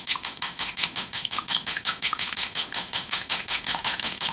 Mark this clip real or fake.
fake